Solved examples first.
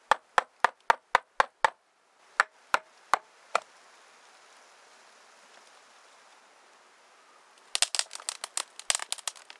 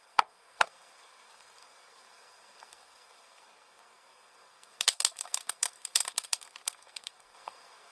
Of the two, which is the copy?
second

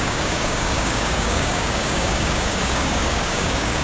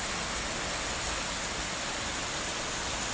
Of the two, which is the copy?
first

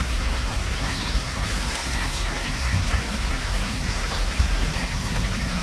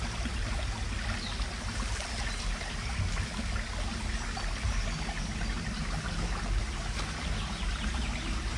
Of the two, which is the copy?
first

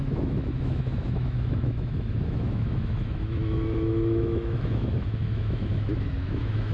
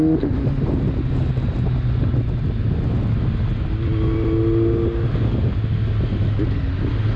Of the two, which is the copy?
first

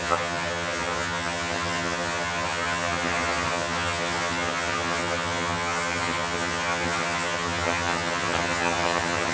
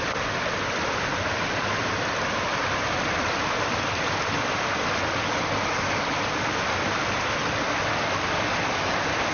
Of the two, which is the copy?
first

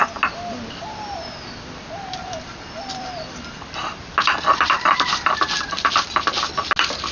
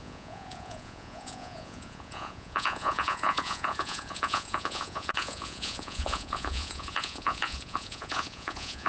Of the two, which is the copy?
second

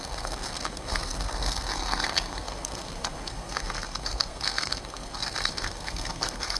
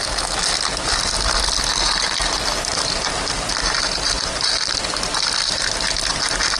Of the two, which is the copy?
first